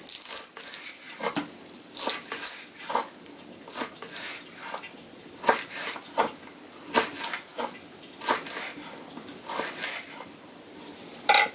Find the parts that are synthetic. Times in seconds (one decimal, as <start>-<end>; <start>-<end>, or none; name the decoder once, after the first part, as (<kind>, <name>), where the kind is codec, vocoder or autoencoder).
none